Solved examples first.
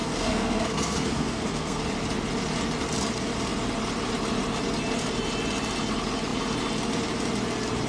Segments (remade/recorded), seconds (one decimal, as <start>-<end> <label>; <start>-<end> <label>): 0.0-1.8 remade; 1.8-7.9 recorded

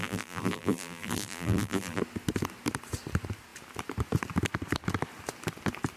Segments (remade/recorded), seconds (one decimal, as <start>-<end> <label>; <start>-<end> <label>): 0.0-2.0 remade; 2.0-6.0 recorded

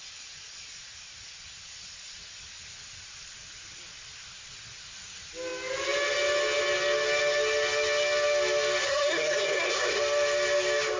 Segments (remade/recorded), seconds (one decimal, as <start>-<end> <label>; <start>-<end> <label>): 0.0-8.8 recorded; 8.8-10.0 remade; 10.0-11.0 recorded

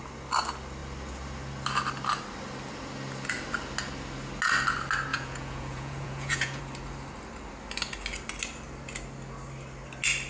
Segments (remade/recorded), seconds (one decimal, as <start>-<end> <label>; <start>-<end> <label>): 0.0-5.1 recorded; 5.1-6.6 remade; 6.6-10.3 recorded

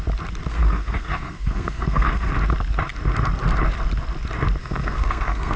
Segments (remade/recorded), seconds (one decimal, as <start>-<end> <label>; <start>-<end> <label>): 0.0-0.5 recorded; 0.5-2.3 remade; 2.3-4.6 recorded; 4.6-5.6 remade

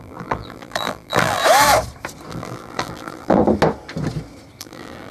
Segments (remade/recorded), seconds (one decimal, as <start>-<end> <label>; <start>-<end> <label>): 0.0-1.4 remade; 1.4-2.3 recorded; 2.3-3.4 remade; 3.4-4.6 recorded; 4.6-5.1 remade